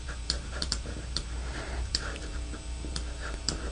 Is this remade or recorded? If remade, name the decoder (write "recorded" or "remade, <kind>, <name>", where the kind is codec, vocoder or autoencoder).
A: remade, vocoder, BigVGAN v2